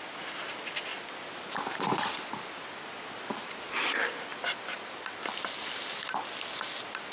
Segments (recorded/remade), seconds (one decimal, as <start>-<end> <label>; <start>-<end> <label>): 0.0-7.1 recorded